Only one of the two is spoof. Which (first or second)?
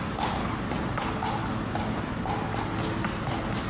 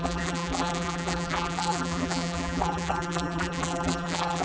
second